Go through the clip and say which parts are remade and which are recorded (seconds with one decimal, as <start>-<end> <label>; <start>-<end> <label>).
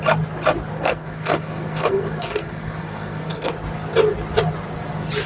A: 0.0-0.7 recorded; 0.7-3.5 remade; 3.5-5.3 recorded